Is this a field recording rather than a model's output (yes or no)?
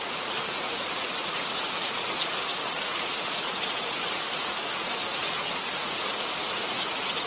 no